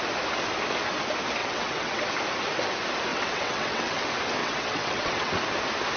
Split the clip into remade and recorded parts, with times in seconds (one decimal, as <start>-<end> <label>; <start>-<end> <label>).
0.0-1.4 recorded; 1.4-2.0 remade; 2.0-3.1 recorded; 3.1-4.0 remade; 4.0-4.4 recorded; 4.4-5.4 remade; 5.4-6.0 recorded